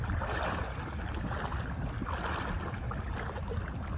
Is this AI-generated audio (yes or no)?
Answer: no